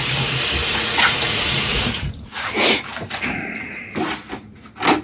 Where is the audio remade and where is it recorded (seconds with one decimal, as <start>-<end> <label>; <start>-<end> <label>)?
0.0-0.6 recorded; 0.6-2.5 remade; 2.5-2.9 recorded; 2.9-3.9 remade; 3.9-5.0 recorded